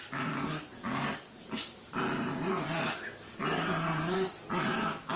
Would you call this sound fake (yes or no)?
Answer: no